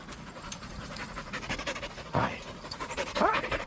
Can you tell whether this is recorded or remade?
remade